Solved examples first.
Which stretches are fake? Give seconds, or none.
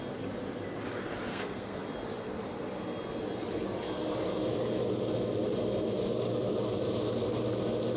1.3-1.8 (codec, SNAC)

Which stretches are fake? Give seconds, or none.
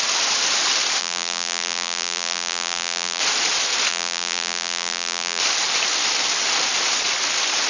1.0-3.2 (vocoder, BigVGAN v2); 3.9-5.4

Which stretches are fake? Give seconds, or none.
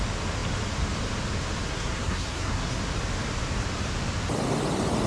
1.7-2.8 (codec, SNAC)